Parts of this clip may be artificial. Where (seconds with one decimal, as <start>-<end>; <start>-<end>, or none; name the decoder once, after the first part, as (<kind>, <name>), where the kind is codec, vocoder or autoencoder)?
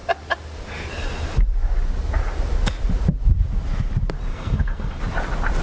4.3-5.0 (codec, SNAC)